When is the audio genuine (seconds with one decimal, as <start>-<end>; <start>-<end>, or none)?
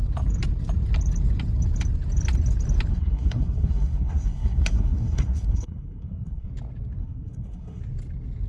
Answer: 0.0-2.9; 6.5-7.0; 7.8-8.5